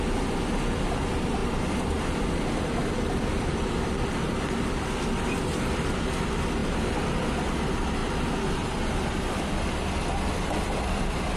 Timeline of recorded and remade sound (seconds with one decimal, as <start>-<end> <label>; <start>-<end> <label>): 0.0-11.4 recorded